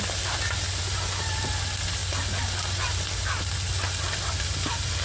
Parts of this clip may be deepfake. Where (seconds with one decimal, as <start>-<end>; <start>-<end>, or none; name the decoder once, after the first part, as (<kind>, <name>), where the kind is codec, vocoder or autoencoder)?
none